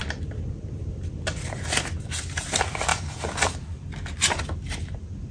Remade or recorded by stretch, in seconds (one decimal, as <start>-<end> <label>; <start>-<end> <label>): 0.0-5.3 recorded